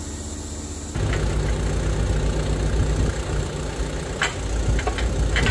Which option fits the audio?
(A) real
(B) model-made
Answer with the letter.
A